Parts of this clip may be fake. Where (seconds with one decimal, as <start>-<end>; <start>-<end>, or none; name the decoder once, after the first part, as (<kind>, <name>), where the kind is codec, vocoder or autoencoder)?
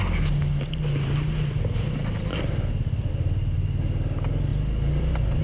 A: none